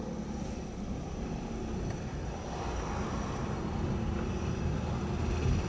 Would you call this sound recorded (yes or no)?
yes